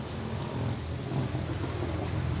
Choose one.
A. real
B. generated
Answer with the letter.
A